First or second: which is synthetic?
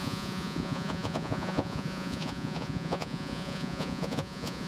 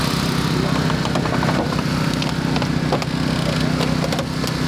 first